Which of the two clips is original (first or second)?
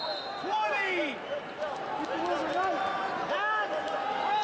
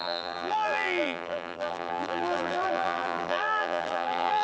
first